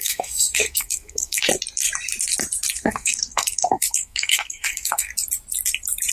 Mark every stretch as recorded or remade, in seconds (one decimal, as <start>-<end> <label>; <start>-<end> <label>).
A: 0.0-1.5 remade; 1.5-2.7 recorded; 2.7-5.1 remade; 5.1-6.1 recorded